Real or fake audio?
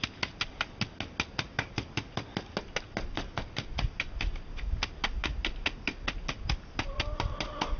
real